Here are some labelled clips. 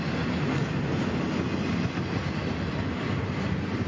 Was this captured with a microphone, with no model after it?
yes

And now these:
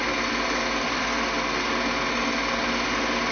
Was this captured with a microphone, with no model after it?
yes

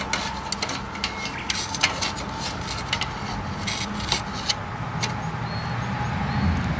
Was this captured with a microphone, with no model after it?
yes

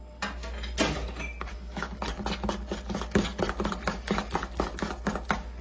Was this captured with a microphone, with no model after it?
yes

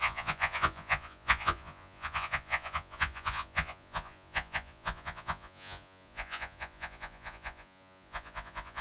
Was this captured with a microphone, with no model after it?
no